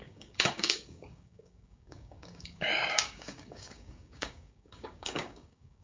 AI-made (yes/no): yes